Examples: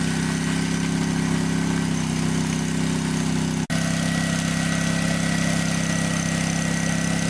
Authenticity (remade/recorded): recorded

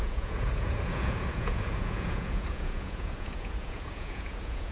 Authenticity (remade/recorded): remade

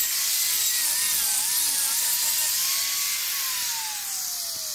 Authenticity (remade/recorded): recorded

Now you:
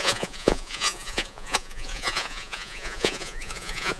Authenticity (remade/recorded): remade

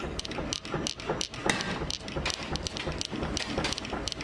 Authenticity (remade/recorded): recorded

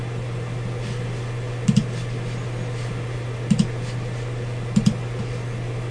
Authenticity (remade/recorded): recorded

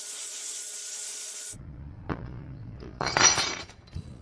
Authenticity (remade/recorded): remade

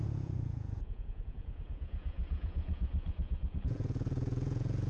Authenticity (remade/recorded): remade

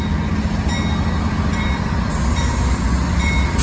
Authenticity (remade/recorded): recorded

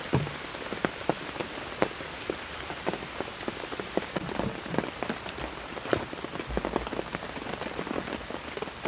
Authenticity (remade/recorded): recorded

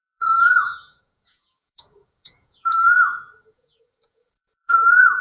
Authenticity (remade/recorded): remade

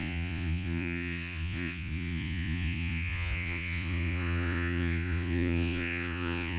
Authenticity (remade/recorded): remade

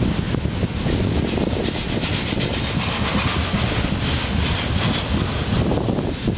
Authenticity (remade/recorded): recorded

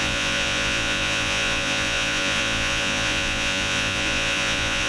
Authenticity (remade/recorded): remade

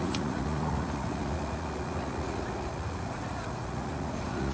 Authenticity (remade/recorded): remade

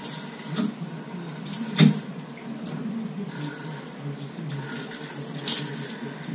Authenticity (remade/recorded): recorded